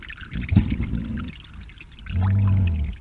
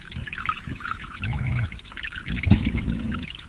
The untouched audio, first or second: first